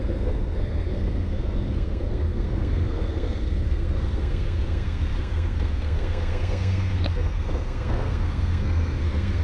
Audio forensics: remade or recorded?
remade